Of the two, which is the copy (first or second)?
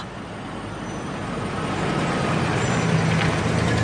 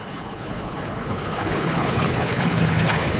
second